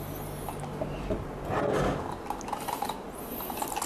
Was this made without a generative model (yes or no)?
yes